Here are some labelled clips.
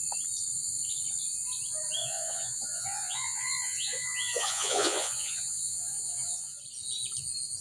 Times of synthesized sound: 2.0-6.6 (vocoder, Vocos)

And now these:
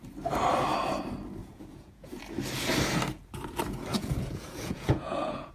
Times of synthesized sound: 1.4-2.2 (vocoder, Vocos); 3.9-5.5